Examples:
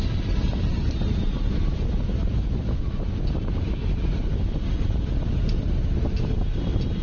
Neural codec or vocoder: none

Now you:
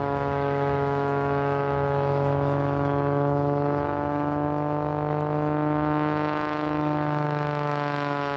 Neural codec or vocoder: autoencoder, DAC-VAE